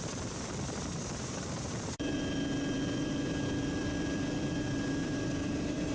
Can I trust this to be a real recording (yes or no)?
no